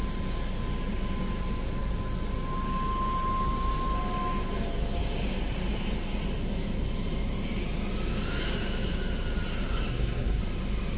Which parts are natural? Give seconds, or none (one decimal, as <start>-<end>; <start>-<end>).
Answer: 0.0-9.9; 10.4-11.0